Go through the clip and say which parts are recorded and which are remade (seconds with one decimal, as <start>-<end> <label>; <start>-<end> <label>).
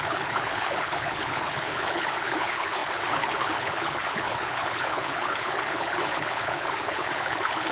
0.0-7.7 remade